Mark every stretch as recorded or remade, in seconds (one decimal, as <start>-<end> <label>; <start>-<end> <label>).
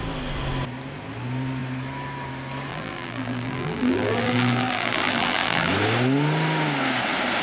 0.0-2.7 recorded; 2.7-5.7 remade; 5.7-7.4 recorded